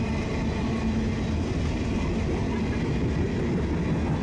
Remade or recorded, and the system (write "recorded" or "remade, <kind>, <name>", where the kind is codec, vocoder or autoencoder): recorded